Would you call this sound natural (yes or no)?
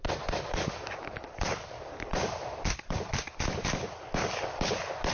yes